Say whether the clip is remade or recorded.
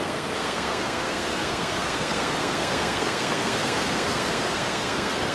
remade